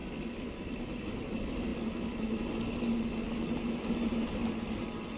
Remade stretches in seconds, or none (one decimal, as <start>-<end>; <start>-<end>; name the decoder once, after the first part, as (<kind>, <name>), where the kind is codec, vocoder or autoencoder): none